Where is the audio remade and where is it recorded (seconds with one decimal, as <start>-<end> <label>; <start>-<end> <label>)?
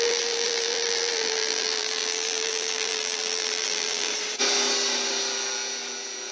0.0-4.1 remade; 4.1-6.3 recorded